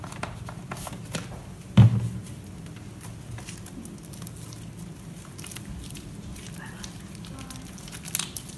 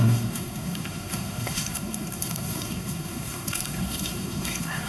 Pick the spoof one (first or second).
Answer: second